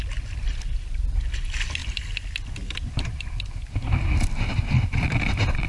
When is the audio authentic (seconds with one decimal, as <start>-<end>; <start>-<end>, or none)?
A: 0.0-1.8; 5.2-5.7